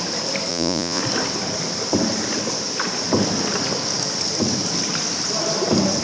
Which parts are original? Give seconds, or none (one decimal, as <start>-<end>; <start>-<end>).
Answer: 0.0-0.5; 1.0-6.0